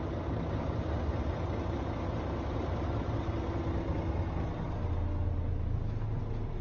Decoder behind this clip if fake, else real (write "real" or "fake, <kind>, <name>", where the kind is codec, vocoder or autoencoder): real